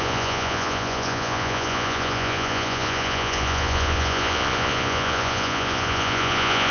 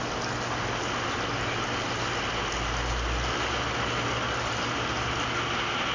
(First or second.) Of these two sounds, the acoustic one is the second